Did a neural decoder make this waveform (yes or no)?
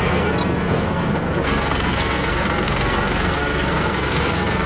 yes